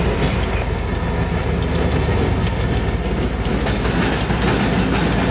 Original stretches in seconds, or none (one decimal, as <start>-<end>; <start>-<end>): 0.0-3.5; 4.2-5.3